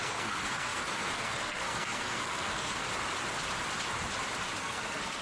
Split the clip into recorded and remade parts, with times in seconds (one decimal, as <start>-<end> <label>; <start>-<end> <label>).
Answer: 0.0-2.8 remade; 2.8-4.6 recorded; 4.6-5.2 remade